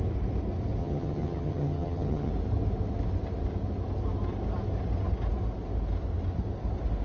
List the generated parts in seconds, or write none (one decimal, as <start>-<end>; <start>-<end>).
0.8-2.3